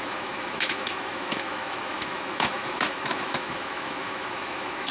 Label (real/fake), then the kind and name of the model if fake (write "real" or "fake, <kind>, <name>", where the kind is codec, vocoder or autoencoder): fake, autoencoder, DAC-VAE